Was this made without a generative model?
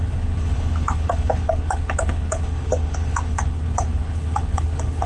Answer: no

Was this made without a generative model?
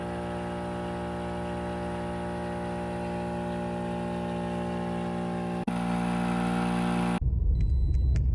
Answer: yes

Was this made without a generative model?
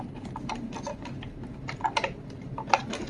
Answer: yes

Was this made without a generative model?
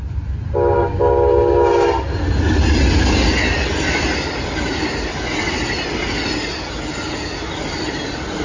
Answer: yes